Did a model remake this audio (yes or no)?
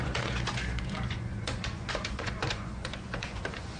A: yes